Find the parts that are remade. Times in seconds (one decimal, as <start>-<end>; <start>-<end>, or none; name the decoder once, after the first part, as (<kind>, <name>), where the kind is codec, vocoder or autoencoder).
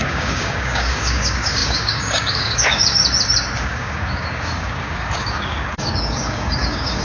0.0-3.0 (codec, DAC); 3.6-7.0